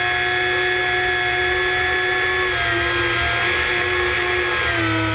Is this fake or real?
real